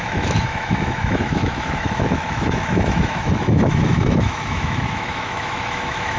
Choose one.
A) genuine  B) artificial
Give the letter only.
B